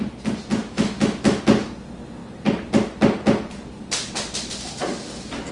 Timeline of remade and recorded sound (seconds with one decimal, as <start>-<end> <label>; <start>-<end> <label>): 0.0-0.6 recorded; 0.6-1.4 remade; 1.4-5.5 recorded